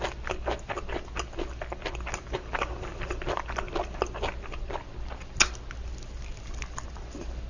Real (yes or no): yes